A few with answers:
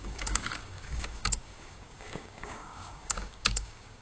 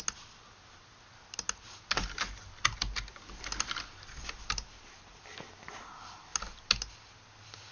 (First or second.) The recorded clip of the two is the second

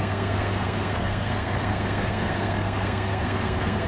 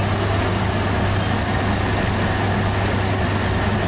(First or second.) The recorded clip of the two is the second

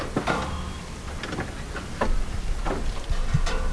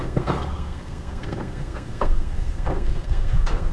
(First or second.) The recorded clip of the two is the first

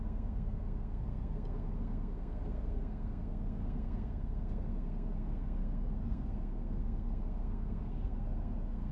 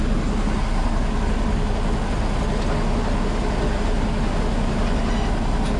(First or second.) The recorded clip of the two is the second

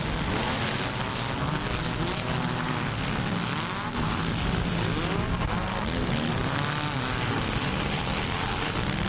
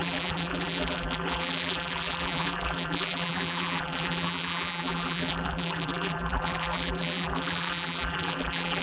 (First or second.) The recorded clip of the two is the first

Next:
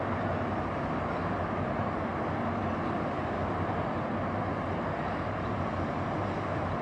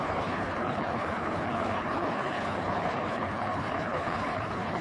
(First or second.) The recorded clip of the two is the first